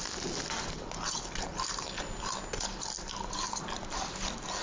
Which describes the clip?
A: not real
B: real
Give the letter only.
B